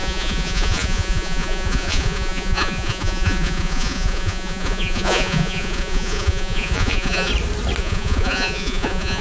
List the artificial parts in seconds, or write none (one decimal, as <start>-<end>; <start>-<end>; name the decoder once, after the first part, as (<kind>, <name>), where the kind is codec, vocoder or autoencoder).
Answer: 0.0-7.3 (vocoder, Vocos); 7.8-9.2